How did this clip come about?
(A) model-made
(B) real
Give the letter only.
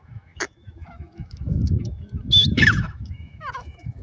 A